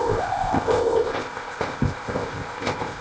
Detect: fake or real fake